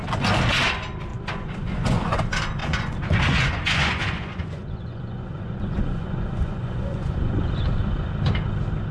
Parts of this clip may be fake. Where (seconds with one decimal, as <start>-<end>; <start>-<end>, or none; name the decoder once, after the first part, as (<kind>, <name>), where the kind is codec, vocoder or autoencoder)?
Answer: 1.1-2.2 (vocoder, Vocos); 2.6-7.5

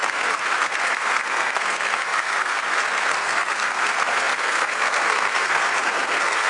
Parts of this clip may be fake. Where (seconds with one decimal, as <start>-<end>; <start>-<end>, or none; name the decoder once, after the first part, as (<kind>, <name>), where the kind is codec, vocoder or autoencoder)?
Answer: 0.0-6.5 (codec, SNAC)

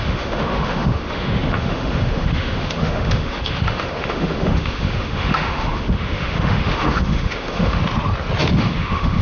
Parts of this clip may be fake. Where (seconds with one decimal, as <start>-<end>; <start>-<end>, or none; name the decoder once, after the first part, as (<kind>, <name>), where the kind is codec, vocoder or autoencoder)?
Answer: 0.0-7.8 (autoencoder, DAC-VAE); 8.4-9.2